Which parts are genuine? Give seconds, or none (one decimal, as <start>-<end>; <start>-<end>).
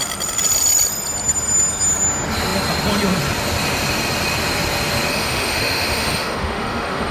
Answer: 0.0-5.1